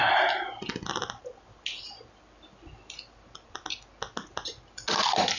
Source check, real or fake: real